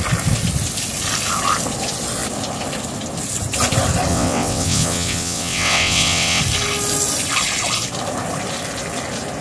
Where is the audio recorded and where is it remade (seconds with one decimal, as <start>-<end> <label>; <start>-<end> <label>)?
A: 0.0-4.1 recorded; 4.1-6.4 remade; 6.4-9.4 recorded